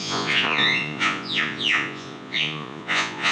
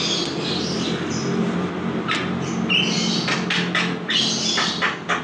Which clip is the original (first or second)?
second